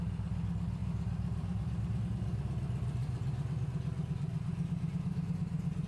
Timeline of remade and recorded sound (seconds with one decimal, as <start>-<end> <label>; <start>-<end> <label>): 0.0-0.8 recorded; 0.8-2.0 remade; 2.0-3.0 recorded; 3.0-5.9 remade